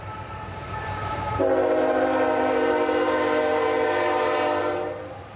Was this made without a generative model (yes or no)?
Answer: no